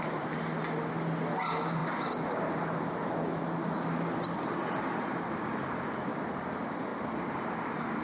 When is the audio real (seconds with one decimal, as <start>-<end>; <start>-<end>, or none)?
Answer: 0.0-8.0